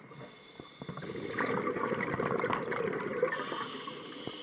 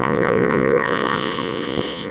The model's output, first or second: second